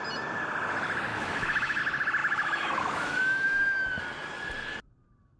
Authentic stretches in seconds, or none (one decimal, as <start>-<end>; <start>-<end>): 0.0-1.1; 1.8-2.2; 4.0-5.4